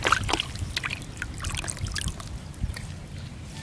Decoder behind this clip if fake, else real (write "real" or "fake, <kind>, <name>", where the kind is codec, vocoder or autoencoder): real